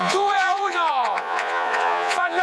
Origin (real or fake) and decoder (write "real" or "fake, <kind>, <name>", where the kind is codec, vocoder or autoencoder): fake, vocoder, Vocos